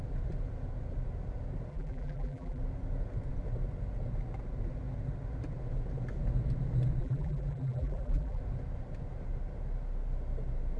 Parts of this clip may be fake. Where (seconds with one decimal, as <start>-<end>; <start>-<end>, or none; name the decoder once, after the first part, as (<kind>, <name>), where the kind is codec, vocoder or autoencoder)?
1.7-2.6 (vocoder, BigVGAN v2); 7.0-8.4